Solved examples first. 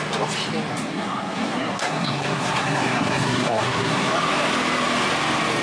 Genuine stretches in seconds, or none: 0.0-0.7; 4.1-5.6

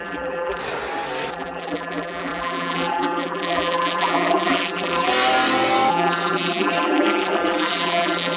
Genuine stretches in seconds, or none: 0.6-1.3; 5.1-5.9